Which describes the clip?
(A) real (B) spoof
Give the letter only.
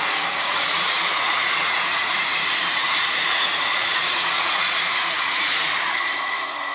B